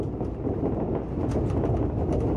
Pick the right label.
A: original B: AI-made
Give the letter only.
A